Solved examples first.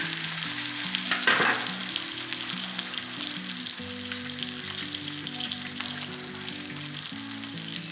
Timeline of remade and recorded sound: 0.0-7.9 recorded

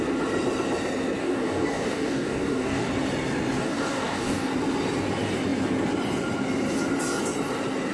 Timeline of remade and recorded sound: 0.0-1.2 recorded; 1.2-2.9 remade; 2.9-3.6 recorded; 3.6-4.5 remade; 4.5-7.9 recorded

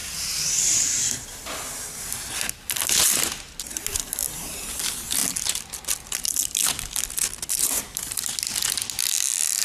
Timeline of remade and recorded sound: 0.0-9.6 recorded

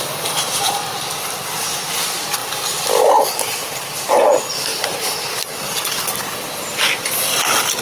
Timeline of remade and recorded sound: 0.0-7.8 recorded